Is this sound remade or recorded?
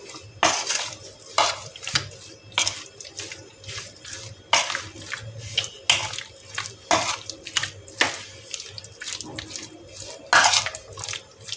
recorded